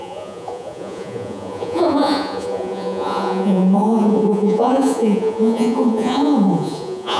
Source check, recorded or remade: remade